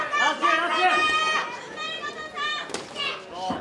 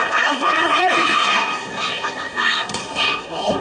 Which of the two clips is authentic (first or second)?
first